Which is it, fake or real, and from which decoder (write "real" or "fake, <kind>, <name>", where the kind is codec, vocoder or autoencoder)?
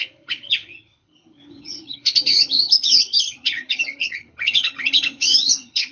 fake, codec, HILCodec